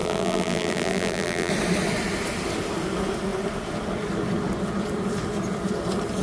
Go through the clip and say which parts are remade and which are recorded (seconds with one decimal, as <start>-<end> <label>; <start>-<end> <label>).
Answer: 0.0-1.5 remade; 1.5-6.2 recorded